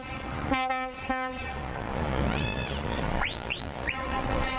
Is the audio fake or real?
fake